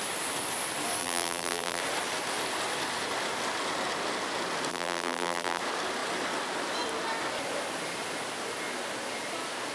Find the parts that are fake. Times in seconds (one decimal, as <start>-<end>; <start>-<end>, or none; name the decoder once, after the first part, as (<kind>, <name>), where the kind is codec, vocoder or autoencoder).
1.0-1.8 (vocoder, BigVGAN v2); 4.7-5.6